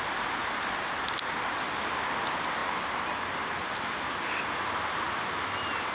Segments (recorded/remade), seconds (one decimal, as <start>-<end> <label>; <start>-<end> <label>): 0.0-5.9 recorded